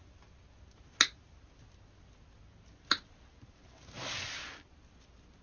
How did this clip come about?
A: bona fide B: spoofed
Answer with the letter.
A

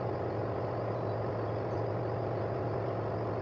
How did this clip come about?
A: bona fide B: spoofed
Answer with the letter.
A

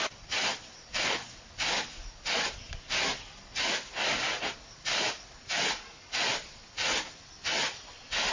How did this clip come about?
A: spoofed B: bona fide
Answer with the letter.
B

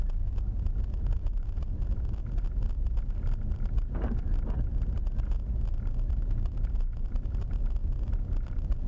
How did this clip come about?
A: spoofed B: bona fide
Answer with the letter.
A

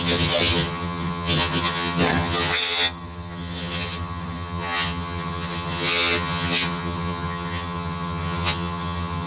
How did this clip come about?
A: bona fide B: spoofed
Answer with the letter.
B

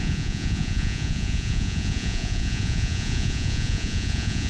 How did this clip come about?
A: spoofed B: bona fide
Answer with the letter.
A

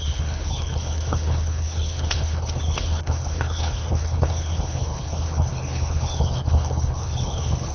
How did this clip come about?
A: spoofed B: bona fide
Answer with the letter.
A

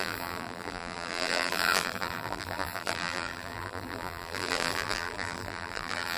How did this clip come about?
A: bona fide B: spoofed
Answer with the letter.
B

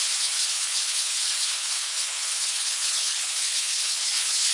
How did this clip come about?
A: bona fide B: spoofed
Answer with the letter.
B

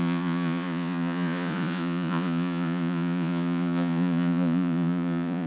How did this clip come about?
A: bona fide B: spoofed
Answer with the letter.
B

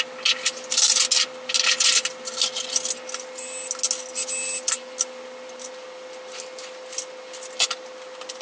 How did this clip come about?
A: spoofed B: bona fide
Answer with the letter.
B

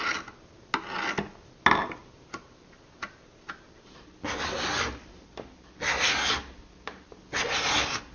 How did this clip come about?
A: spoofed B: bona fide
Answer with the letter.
B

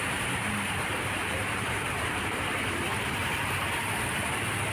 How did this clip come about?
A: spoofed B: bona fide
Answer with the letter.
A